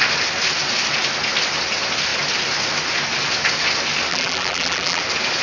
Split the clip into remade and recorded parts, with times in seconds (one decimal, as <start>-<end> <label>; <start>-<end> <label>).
0.0-4.1 recorded; 4.1-5.0 remade; 5.0-5.4 recorded